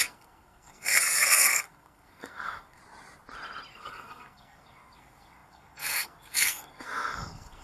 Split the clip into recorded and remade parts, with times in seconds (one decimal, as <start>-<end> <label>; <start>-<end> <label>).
0.0-2.8 remade; 2.8-3.7 recorded; 3.7-7.6 remade